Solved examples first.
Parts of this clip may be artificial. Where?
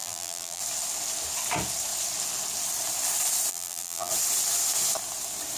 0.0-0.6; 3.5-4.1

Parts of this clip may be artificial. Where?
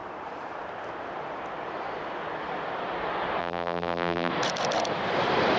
3.4-4.3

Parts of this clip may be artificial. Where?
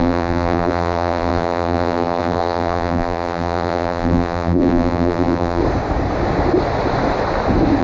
0.0-5.6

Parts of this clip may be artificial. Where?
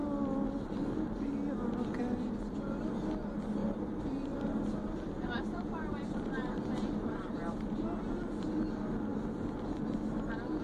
3.6-8.0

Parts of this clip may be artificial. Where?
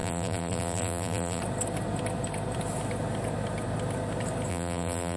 0.0-1.4; 4.5-5.2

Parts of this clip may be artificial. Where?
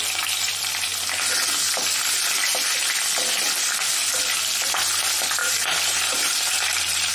5.4-7.1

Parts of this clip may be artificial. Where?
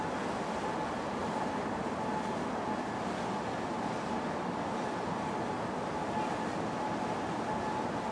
1.2-2.1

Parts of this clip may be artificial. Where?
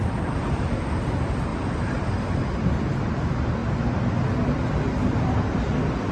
1.5-2.0